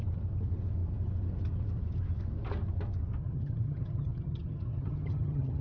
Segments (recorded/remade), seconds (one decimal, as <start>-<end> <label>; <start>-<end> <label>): 0.0-3.2 recorded; 3.2-5.6 remade